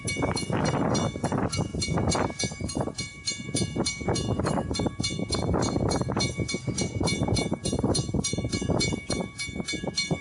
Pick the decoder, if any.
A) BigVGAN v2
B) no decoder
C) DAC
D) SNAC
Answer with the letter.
A